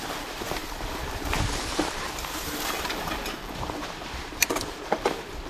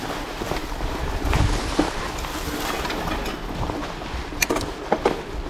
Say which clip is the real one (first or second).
second